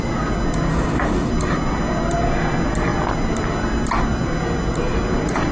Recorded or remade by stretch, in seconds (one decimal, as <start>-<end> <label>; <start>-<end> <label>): 0.0-0.7 recorded; 0.7-1.3 remade; 1.3-5.5 recorded